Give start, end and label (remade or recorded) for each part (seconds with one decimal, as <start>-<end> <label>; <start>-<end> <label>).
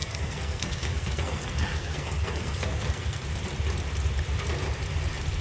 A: 0.0-3.2 remade; 3.2-5.4 recorded